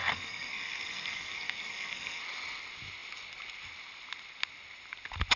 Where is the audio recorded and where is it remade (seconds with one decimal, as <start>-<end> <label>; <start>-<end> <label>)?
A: 0.0-2.2 remade; 2.2-5.4 recorded